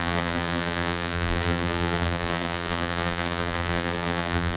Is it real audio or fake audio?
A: fake